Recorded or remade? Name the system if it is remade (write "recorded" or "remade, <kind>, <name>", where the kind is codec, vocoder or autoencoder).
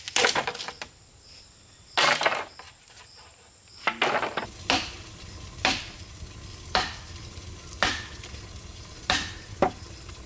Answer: recorded